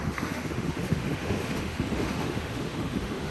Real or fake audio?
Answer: fake